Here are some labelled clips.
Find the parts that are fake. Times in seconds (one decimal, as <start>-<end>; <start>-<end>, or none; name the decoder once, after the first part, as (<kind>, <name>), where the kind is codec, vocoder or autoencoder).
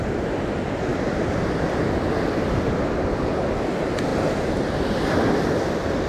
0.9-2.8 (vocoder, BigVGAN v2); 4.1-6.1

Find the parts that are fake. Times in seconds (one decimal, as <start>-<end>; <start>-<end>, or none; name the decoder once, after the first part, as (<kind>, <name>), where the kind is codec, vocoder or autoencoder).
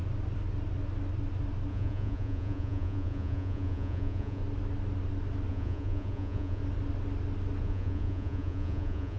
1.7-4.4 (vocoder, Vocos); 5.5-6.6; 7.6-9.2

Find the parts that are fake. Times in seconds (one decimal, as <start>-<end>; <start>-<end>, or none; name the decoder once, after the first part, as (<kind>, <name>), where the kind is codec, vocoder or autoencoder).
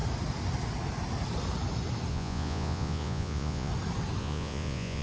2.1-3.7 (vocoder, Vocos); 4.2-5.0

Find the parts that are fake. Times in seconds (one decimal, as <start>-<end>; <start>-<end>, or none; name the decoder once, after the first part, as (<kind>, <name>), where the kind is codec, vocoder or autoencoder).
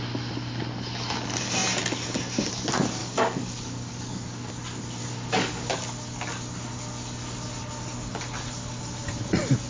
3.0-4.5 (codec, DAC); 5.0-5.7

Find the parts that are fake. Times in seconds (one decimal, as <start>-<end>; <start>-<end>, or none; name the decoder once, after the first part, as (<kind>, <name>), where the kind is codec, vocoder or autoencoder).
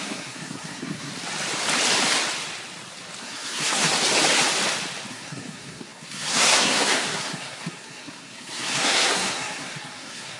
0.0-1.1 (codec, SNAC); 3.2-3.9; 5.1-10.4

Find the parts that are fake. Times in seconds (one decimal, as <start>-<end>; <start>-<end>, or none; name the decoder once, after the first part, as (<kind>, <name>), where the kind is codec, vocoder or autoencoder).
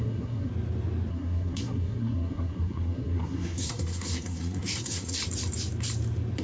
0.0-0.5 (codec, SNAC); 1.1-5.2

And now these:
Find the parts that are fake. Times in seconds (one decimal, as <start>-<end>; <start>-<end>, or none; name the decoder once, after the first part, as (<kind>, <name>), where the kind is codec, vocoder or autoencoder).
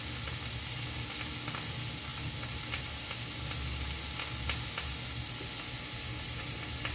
none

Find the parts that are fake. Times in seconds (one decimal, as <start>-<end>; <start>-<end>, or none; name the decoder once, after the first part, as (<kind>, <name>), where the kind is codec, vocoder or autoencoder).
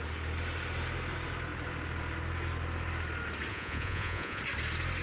3.5-4.4 (vocoder, Vocos)